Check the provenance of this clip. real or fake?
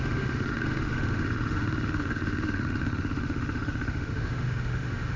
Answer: fake